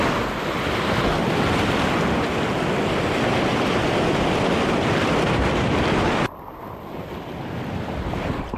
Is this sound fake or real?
real